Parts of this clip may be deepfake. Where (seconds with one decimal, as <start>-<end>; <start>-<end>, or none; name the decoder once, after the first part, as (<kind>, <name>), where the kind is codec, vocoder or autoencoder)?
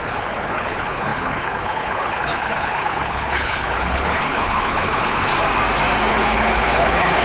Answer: 0.0-5.3 (codec, HILCodec); 6.1-7.2